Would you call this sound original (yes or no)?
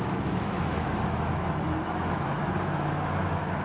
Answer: no